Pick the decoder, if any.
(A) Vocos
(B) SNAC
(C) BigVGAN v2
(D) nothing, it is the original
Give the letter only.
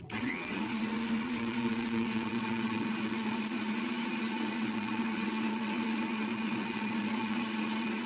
A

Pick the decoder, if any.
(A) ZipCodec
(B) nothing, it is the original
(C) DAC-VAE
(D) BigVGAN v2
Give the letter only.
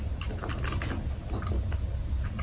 B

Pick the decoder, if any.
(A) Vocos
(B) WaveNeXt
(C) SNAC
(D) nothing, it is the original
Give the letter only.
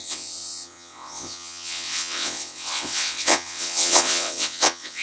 B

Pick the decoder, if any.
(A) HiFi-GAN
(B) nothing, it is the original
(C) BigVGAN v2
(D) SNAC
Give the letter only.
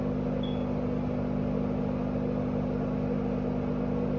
B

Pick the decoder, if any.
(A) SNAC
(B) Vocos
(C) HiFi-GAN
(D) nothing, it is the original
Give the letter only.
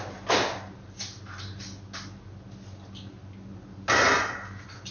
D